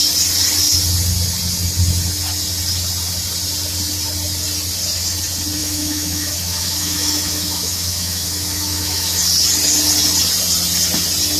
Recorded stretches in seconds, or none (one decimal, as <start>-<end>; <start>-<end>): 0.0-5.6; 9.2-11.4